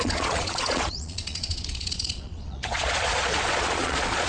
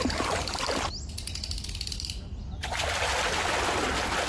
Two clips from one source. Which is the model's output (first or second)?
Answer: first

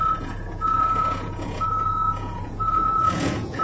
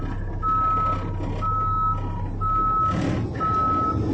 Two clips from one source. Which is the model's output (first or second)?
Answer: first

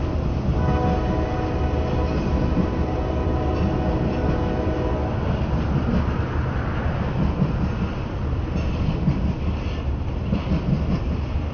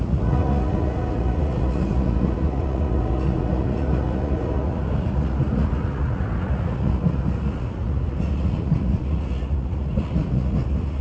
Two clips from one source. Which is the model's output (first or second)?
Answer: second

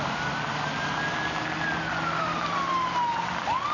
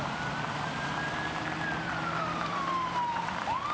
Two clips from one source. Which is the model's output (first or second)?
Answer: second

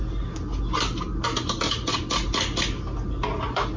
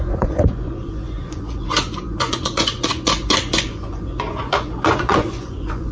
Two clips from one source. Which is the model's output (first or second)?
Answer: second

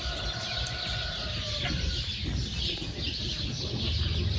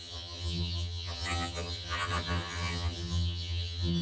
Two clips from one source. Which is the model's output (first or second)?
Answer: second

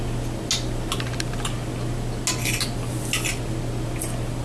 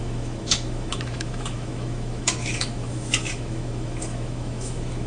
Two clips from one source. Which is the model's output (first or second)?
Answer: second